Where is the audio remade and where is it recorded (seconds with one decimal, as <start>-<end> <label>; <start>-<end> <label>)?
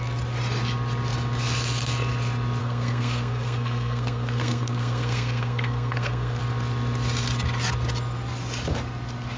0.0-2.6 recorded; 2.6-6.4 remade; 6.4-9.4 recorded